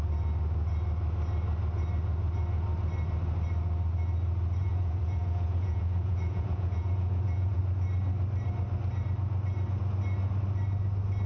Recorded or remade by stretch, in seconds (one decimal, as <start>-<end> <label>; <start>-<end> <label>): 0.0-4.6 recorded; 4.6-7.6 remade; 7.6-11.3 recorded